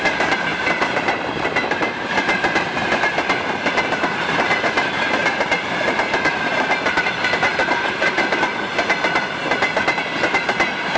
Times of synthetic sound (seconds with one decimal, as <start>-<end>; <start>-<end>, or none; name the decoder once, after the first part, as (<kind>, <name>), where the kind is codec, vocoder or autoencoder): 0.5-2.1 (vocoder, BigVGAN v2); 7.6-8.4

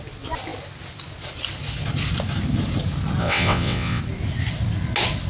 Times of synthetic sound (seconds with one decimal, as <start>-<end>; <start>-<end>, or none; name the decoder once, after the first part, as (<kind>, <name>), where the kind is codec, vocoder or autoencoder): 3.2-4.0 (vocoder, WaveNeXt)

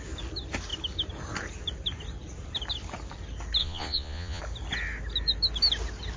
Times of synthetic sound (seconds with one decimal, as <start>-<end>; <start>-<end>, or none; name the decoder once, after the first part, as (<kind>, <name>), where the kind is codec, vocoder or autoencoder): 3.6-4.4 (vocoder, Vocos)